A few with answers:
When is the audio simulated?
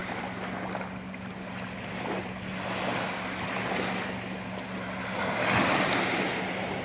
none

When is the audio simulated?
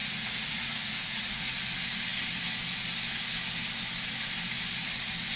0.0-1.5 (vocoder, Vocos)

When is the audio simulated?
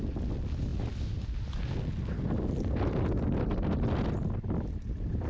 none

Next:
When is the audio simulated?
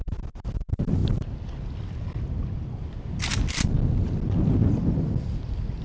none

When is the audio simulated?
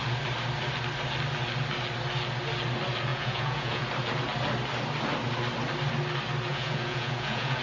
3.1-3.8 (vocoder, Vocos); 6.5-7.6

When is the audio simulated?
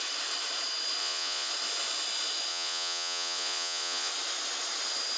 1.0-1.5 (vocoder, Vocos); 2.5-4.1